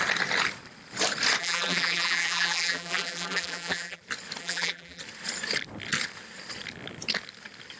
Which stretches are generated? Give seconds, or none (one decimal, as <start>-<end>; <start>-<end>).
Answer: 1.4-4.0; 4.4-5.0